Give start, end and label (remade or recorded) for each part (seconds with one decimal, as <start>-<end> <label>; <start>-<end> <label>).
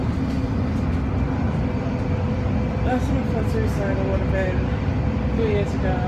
0.0-6.1 recorded